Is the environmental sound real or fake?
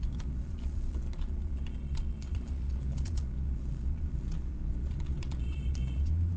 fake